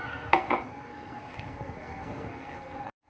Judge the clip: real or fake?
fake